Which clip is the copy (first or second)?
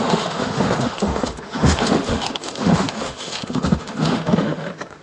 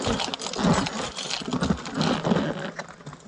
first